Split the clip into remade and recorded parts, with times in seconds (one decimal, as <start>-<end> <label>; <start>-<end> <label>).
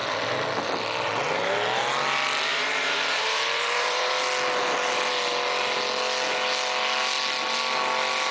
0.0-2.5 recorded; 2.5-4.1 remade; 4.1-8.3 recorded